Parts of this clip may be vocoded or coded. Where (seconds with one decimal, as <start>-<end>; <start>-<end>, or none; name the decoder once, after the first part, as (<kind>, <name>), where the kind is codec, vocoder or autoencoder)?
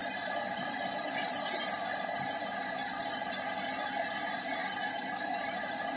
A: none